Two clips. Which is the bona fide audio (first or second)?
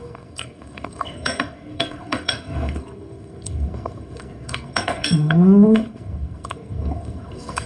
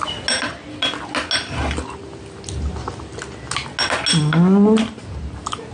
second